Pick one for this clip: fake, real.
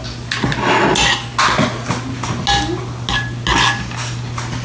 real